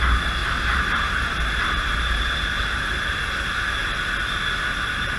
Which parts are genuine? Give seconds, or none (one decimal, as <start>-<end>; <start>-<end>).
0.0-0.4; 3.4-5.2